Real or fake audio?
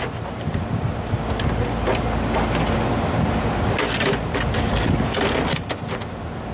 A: real